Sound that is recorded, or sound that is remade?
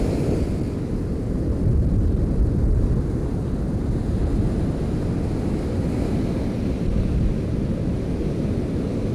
recorded